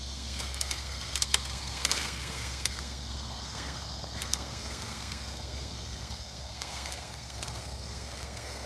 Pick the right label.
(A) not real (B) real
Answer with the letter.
A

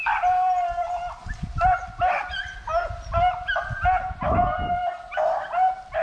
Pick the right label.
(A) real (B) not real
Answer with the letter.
A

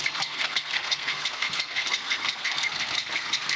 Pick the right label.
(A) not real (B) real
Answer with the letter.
A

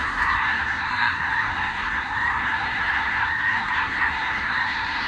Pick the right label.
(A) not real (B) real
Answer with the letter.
A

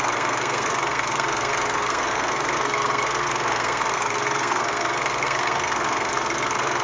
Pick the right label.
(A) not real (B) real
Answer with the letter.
A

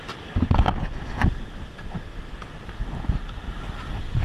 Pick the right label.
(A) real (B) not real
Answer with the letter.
A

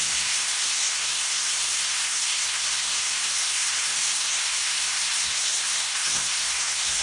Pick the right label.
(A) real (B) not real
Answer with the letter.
B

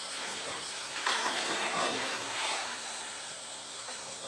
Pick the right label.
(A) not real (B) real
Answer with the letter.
A